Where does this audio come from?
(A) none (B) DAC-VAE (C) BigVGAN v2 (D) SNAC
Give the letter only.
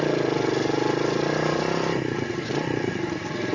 A